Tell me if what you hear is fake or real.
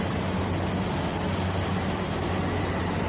real